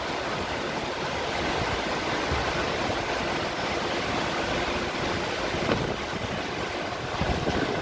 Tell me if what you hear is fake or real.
real